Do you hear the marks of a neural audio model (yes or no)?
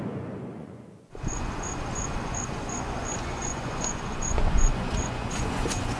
yes